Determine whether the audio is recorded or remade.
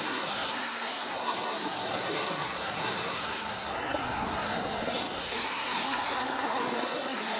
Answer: remade